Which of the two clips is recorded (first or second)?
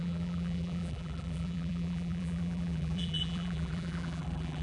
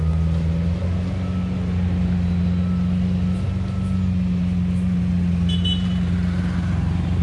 second